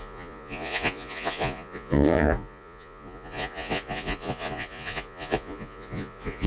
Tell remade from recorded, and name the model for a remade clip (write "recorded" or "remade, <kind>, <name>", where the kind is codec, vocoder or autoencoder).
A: remade, vocoder, Vocos